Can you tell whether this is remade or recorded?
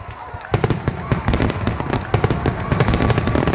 recorded